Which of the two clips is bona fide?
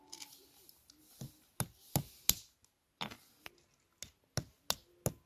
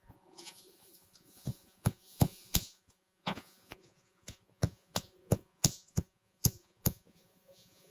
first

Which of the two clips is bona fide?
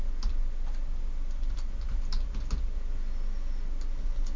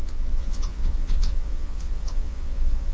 first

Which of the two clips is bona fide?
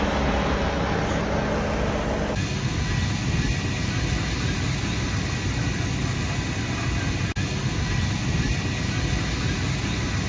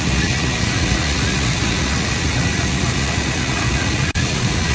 first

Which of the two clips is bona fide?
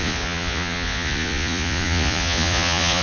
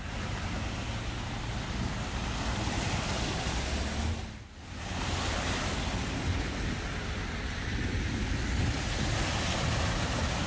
second